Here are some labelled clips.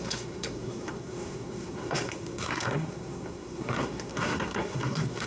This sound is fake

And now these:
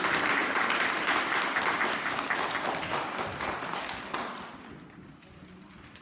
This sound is real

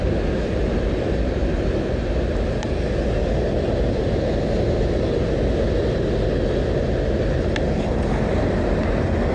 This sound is real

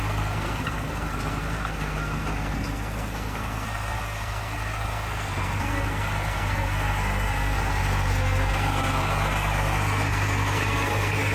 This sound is fake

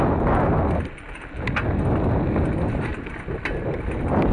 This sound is real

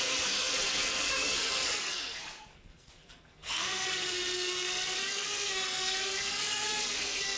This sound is fake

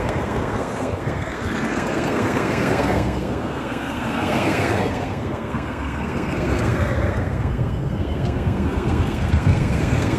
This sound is fake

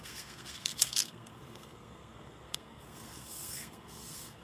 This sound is fake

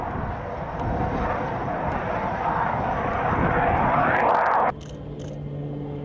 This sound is real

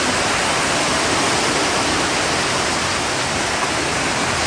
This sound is real